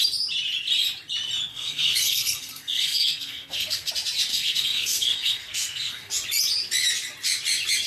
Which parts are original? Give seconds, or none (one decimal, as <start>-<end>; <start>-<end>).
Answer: 0.0-1.5; 3.9-4.3; 6.1-7.9